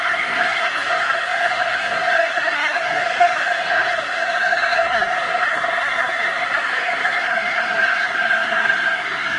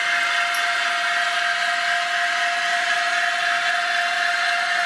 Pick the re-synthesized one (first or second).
first